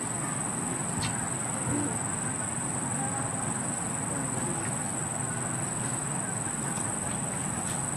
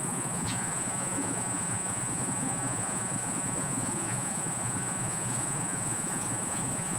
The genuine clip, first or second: first